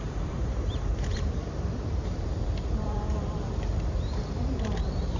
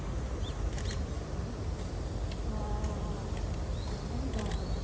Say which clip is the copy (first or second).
first